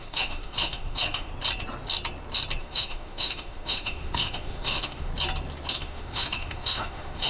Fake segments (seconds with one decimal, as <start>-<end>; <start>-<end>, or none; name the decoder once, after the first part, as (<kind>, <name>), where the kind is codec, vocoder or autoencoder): 0.0-1.3 (autoencoder, DAC-VAE); 2.6-5.1; 5.7-7.3